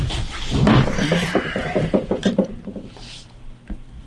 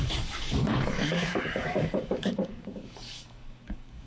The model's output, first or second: second